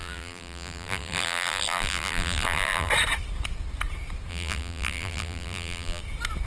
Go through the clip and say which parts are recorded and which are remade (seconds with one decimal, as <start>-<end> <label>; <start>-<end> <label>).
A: 0.0-2.9 remade; 2.9-4.3 recorded; 4.3-6.0 remade; 6.0-6.5 recorded

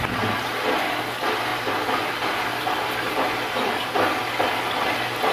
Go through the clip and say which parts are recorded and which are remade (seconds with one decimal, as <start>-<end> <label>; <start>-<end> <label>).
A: 0.0-5.3 recorded

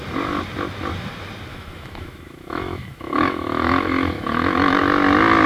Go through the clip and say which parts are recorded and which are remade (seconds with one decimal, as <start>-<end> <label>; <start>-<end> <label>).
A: 0.0-1.5 recorded; 1.5-4.8 remade; 4.8-5.5 recorded

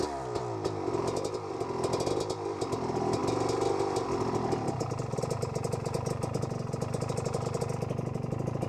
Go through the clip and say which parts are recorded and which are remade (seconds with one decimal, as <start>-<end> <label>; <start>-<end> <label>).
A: 0.0-8.7 recorded

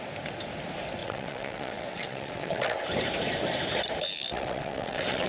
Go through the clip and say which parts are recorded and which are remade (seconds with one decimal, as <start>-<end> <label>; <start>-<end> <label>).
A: 0.0-1.0 recorded; 1.0-2.8 remade; 2.8-4.3 recorded; 4.3-5.3 remade

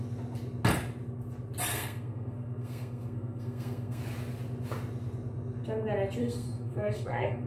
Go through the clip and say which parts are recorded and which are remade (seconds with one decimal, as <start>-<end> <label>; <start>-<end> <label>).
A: 0.0-1.7 recorded; 1.7-4.0 remade; 4.0-6.2 recorded; 6.2-7.5 remade